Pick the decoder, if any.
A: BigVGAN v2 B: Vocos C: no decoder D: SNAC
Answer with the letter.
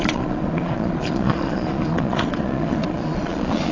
B